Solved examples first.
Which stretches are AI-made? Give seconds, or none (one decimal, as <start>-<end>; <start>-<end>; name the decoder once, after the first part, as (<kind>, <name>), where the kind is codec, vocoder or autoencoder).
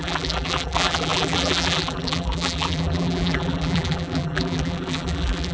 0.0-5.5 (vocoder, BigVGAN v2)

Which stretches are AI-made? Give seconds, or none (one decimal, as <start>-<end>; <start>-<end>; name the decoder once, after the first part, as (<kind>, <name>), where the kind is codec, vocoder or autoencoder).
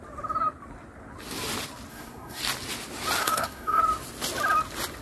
1.9-2.4 (codec, SNAC); 3.2-3.8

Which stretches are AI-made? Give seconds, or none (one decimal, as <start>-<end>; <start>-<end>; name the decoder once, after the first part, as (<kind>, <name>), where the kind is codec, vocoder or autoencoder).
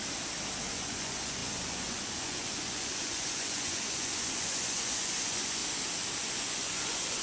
0.7-5.6 (vocoder, Vocos); 6.3-7.2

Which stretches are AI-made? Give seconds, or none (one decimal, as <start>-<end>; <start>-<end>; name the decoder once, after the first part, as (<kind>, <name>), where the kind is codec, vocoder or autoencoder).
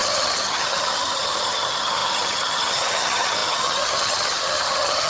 0.0-5.1 (vocoder, HiFi-GAN)